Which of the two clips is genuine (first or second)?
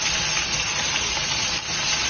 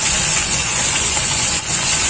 first